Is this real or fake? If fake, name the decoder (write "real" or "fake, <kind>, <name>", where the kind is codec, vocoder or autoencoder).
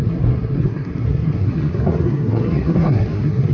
fake, codec, SNAC